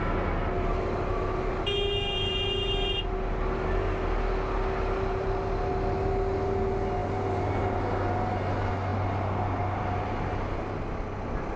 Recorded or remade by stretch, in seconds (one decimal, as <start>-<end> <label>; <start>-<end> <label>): 0.0-11.6 recorded